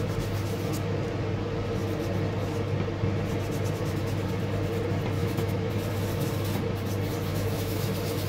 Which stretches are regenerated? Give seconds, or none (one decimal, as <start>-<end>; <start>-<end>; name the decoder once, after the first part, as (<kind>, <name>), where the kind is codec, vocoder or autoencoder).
5.2-5.7 (autoencoder, DAC-VAE); 7.3-7.9